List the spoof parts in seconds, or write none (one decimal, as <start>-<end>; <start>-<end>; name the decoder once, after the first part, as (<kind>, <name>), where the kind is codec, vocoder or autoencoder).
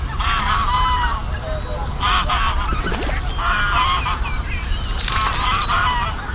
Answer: none